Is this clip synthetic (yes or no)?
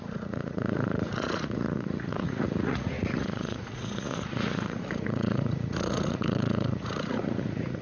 yes